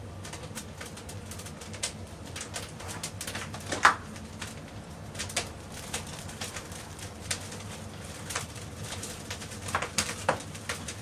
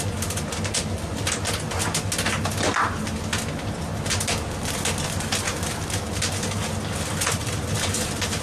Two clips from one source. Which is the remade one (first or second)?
first